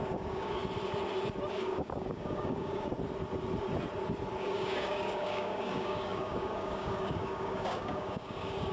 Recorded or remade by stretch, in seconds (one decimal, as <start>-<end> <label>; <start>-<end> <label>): 0.0-0.6 remade; 0.6-1.5 recorded; 1.5-2.9 remade; 2.9-4.4 recorded; 4.4-8.7 remade